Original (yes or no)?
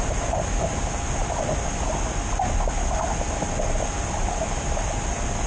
yes